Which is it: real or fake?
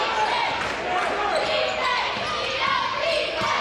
real